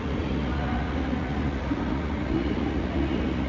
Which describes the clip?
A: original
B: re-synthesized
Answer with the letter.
B